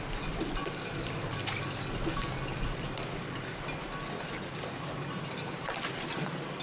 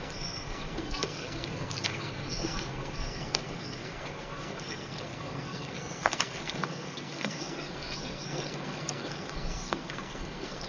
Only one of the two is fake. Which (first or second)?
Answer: second